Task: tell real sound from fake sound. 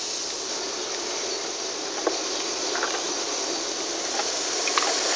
real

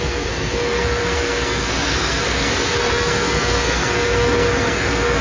fake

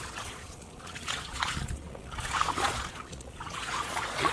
fake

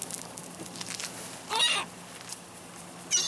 real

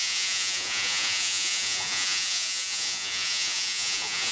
fake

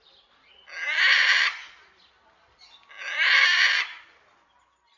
real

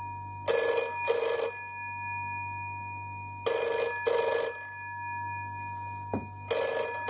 real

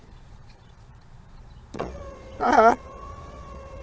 fake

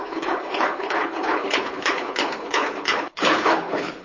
fake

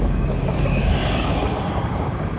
fake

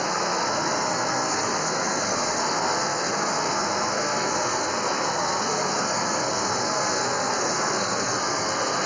fake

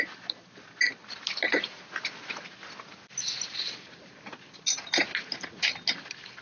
real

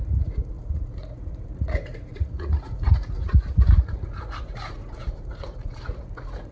fake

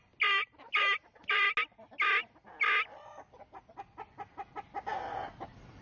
real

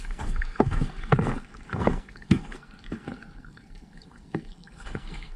fake